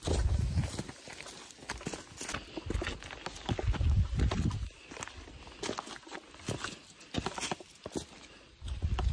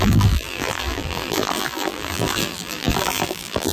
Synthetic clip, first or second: second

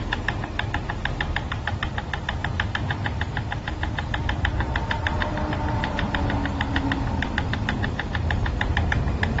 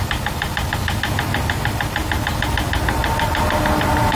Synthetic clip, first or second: first